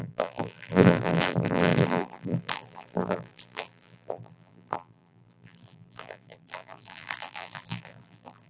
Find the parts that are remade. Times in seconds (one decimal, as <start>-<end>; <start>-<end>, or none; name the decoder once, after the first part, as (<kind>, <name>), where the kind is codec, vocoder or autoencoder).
0.0-8.5 (vocoder, BigVGAN v2)